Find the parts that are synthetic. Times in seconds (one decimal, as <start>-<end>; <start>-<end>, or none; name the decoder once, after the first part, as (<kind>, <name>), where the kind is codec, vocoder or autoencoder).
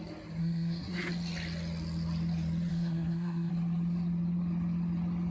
0.4-1.1 (codec, SNAC); 2.7-3.5